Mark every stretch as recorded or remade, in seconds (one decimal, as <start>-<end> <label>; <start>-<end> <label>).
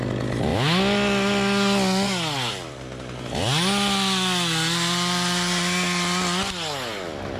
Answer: 0.0-7.4 recorded